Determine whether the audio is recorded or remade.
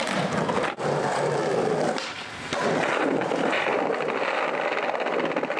recorded